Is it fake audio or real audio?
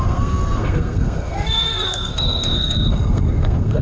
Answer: fake